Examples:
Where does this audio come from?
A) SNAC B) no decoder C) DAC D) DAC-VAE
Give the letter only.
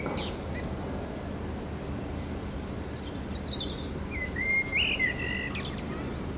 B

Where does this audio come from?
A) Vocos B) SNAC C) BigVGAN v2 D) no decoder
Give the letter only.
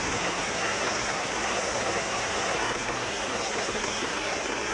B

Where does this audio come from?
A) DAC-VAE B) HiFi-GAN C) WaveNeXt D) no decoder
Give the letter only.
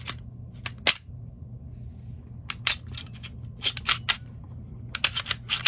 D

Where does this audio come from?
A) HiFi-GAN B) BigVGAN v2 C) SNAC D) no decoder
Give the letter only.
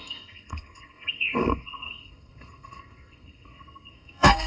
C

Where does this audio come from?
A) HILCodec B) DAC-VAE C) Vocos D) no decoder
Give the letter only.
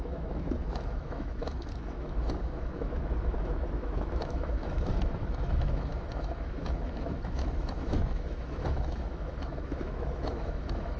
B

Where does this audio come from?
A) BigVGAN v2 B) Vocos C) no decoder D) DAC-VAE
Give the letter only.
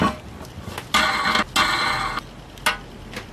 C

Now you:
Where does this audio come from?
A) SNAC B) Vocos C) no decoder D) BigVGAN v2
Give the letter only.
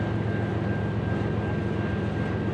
C